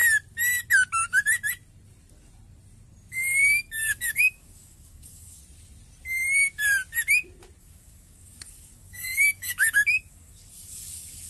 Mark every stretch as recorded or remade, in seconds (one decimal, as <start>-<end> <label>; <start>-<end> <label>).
0.0-3.1 recorded; 3.1-5.4 remade; 5.4-7.6 recorded; 7.6-11.3 remade